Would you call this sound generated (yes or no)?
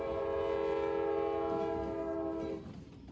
no